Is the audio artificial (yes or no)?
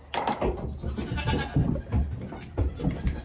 no